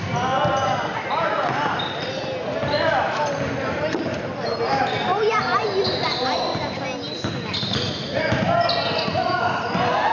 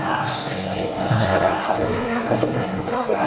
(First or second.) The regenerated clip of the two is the second